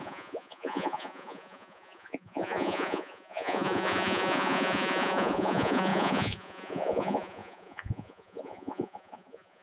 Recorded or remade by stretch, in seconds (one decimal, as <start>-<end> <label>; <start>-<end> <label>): 0.0-9.6 remade